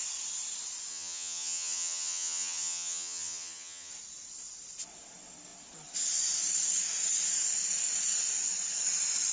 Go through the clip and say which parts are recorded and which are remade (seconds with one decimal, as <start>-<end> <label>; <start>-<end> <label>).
0.0-0.9 recorded; 0.9-3.9 remade; 3.9-9.3 recorded